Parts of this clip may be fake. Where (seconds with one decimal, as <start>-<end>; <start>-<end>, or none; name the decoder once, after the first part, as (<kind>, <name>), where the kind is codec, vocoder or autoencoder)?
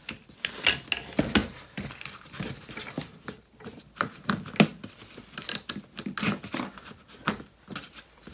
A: 1.4-4.3 (vocoder, BigVGAN v2)